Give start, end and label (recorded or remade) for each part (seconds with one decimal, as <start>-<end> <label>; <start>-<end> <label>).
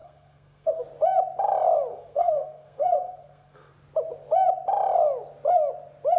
0.0-0.8 remade; 0.8-1.9 recorded; 1.9-3.7 remade; 3.7-6.2 recorded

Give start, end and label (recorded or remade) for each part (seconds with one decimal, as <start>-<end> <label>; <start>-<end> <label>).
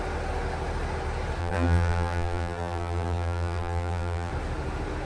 0.0-1.4 recorded; 1.4-4.3 remade; 4.3-5.1 recorded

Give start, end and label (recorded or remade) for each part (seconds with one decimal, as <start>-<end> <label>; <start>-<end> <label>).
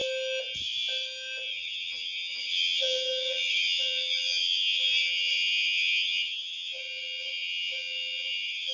0.0-1.5 recorded; 1.5-8.7 remade